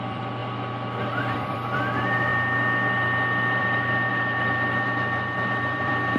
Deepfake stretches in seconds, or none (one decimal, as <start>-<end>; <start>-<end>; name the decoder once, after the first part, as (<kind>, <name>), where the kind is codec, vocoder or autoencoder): 0.0-0.4 (vocoder, BigVGAN v2); 1.2-2.3; 3.6-6.2